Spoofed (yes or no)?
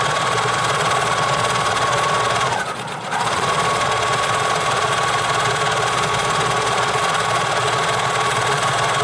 yes